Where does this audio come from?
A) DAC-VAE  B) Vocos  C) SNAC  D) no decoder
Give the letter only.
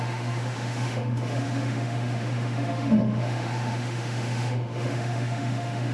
A